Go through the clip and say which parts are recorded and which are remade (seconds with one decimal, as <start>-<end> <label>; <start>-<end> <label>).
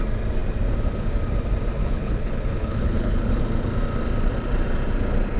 0.0-1.8 recorded; 1.8-3.4 remade; 3.4-5.4 recorded